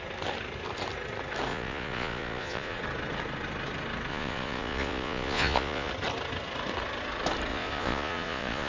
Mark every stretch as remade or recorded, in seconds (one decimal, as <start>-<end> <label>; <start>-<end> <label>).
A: 0.0-1.5 recorded; 1.5-2.8 remade; 2.8-4.1 recorded; 4.1-5.9 remade; 5.9-7.5 recorded; 7.5-8.7 remade